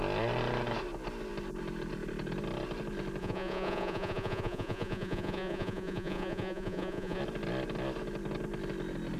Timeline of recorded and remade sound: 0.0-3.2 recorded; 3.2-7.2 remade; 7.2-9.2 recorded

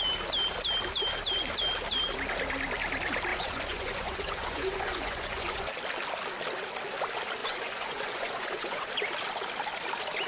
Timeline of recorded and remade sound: 0.0-3.3 recorded; 3.3-5.7 remade; 5.7-7.4 recorded; 7.4-8.9 remade; 8.9-10.3 recorded

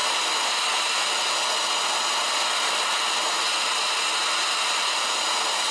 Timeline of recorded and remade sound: 0.0-5.7 recorded

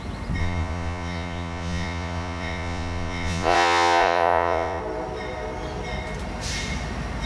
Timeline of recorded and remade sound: 0.0-0.4 recorded; 0.4-4.8 remade; 4.8-7.3 recorded

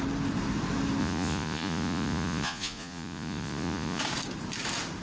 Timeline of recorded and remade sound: 0.0-1.0 recorded; 1.0-4.0 remade; 4.0-5.0 recorded

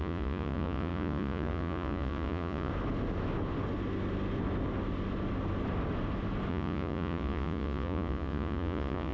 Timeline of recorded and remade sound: 0.0-2.7 remade; 2.7-6.5 recorded; 6.5-9.1 remade

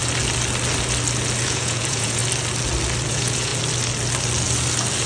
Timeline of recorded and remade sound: 0.0-1.4 recorded; 1.4-2.2 remade; 2.2-3.1 recorded; 3.1-3.5 remade; 3.5-5.1 recorded